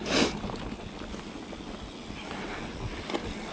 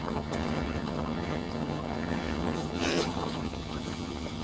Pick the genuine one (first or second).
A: first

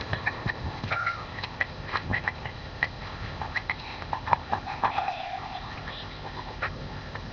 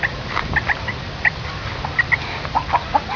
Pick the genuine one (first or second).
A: second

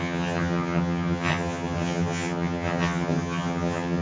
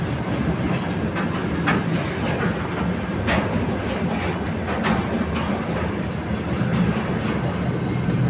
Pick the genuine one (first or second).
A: second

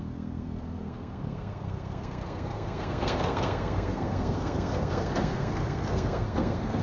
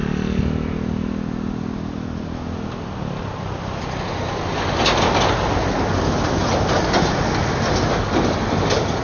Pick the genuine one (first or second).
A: second